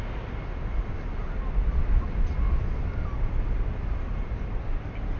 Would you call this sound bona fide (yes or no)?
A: yes